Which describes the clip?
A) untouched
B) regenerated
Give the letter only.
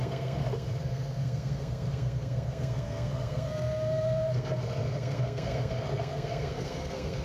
B